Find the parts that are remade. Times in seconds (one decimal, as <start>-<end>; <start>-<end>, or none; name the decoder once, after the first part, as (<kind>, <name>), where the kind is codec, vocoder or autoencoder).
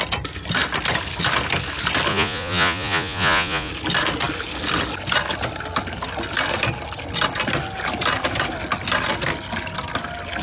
2.1-3.7 (vocoder, Vocos)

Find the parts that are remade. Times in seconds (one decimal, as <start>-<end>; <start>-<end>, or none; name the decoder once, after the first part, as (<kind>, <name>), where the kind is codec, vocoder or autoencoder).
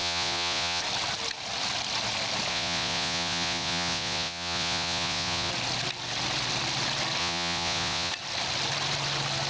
0.0-0.8 (vocoder, Vocos); 2.5-5.5; 7.2-8.1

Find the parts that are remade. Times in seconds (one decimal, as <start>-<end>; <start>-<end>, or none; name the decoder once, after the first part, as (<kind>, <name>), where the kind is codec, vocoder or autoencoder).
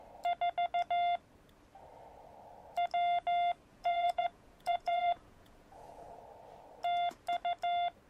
3.7-6.2 (vocoder, Vocos)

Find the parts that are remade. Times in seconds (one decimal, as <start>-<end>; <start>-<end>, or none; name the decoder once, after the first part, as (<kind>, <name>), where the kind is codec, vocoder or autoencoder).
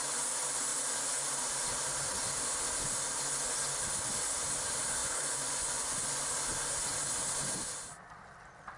5.0-6.2 (vocoder, Vocos)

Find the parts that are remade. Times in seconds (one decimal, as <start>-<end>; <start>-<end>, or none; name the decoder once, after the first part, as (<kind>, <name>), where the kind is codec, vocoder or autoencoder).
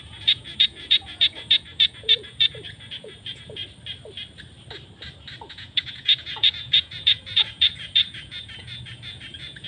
0.0-3.6 (vocoder, Vocos); 5.5-9.7